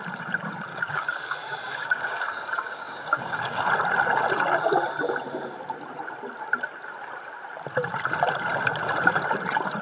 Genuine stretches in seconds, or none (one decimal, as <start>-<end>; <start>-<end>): 0.0-0.7; 3.7-9.8